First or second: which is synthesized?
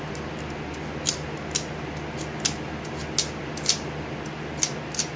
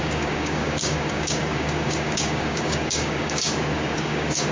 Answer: second